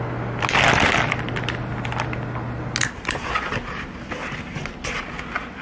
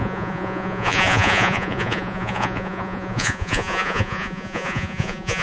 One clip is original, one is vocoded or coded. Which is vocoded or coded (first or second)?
second